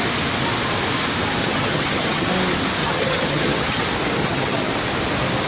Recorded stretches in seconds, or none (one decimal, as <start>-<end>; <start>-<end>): 0.0-1.4; 2.3-2.8; 3.8-4.2; 4.7-5.5